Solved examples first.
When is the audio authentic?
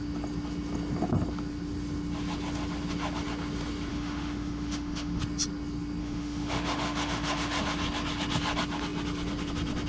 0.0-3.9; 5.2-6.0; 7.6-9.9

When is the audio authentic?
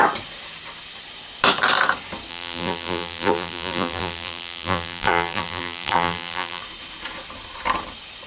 0.0-2.3; 6.6-8.3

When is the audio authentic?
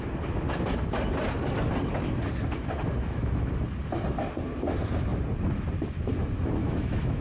0.0-3.0; 3.6-6.6